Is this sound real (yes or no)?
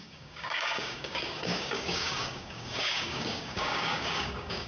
no